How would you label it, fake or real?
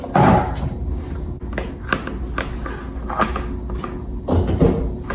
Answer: real